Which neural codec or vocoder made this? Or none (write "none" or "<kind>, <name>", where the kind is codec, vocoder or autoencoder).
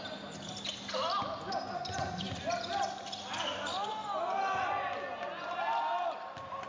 none